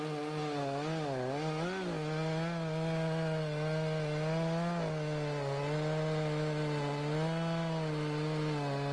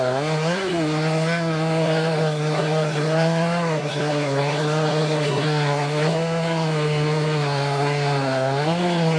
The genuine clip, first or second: first